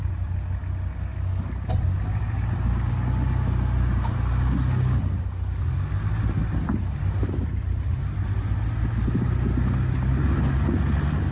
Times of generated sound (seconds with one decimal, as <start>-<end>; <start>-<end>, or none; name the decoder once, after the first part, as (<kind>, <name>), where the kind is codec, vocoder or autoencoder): 6.4-8.6 (vocoder, BigVGAN v2)